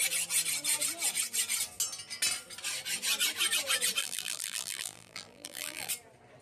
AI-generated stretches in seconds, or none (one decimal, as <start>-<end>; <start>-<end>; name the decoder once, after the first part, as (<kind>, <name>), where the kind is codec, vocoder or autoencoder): 4.0-5.9 (vocoder, BigVGAN v2)